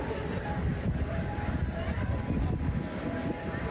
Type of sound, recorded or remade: remade